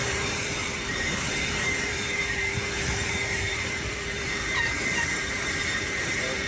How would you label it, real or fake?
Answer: fake